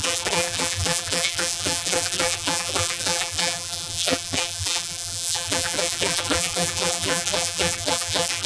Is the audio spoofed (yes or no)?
yes